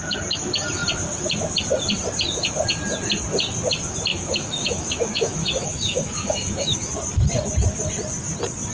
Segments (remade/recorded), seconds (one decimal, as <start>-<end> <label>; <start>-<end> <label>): 0.0-4.1 recorded; 4.1-6.9 remade; 6.9-8.7 recorded